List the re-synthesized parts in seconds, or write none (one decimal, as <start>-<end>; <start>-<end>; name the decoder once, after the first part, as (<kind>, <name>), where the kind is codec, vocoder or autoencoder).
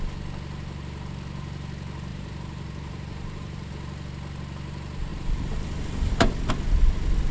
2.1-3.7 (vocoder, BigVGAN v2); 5.1-6.5